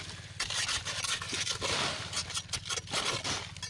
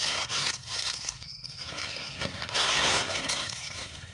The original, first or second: first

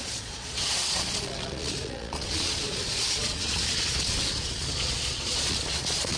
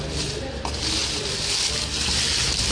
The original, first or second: second